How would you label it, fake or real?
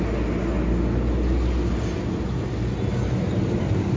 real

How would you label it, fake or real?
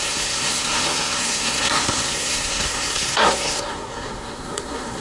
fake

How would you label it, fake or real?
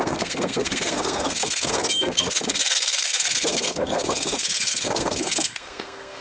fake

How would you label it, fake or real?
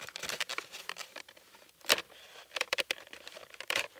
fake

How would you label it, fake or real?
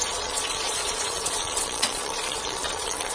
fake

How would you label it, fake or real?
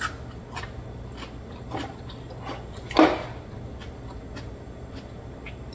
real